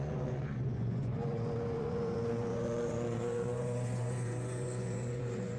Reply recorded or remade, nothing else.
remade